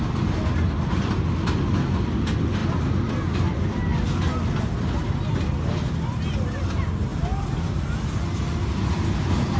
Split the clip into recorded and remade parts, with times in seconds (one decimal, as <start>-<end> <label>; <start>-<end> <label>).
0.0-9.6 recorded